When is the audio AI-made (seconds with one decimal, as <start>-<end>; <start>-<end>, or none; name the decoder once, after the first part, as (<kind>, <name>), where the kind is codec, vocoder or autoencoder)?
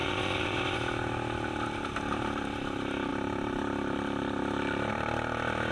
0.0-0.8 (vocoder, Vocos)